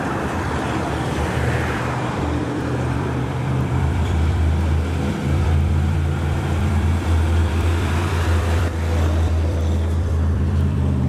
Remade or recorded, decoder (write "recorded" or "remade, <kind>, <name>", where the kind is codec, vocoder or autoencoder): remade, vocoder, BigVGAN v2